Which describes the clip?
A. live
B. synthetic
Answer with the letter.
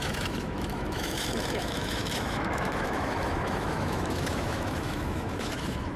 B